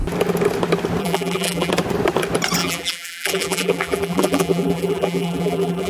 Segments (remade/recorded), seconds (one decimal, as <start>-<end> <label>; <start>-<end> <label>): 0.0-1.0 recorded; 1.0-1.7 remade; 1.7-2.6 recorded; 2.6-5.9 remade